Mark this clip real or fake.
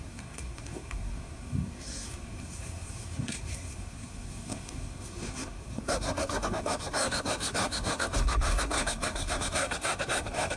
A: fake